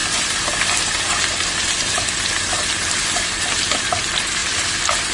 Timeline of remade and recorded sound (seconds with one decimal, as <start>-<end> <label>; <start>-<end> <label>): 0.0-5.1 recorded